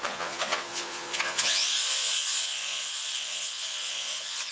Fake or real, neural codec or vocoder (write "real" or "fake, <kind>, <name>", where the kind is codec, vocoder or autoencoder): fake, vocoder, Vocos